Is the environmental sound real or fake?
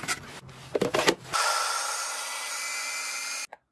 real